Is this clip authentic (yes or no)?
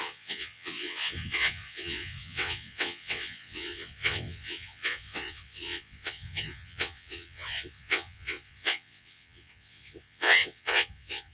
no